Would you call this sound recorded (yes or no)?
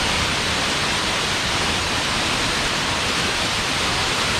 yes